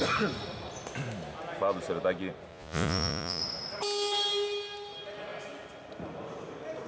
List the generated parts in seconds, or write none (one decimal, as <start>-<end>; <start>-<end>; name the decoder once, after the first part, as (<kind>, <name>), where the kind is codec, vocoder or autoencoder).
2.5-3.4 (vocoder, Vocos)